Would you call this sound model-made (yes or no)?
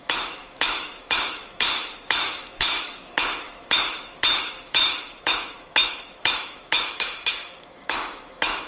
yes